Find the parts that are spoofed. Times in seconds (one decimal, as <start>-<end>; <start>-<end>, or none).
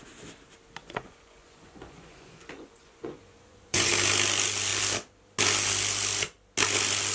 0.8-3.9